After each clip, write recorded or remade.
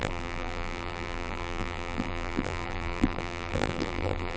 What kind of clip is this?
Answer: remade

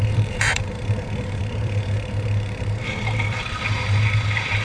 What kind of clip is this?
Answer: remade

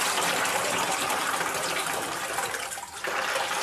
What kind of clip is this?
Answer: remade